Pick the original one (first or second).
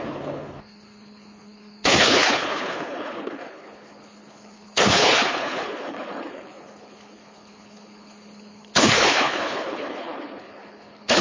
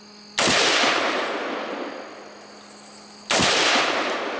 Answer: second